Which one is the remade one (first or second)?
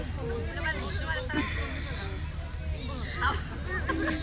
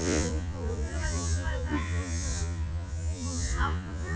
second